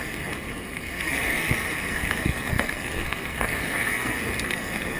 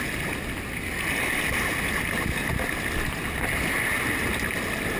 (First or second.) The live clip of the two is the second